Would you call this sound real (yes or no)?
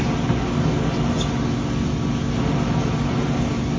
yes